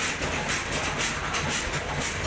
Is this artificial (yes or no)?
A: no